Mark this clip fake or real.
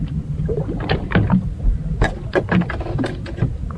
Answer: real